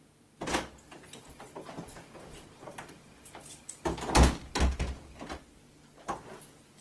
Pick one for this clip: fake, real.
real